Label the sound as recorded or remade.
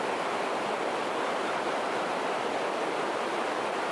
recorded